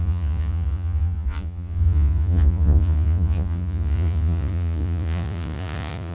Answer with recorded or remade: remade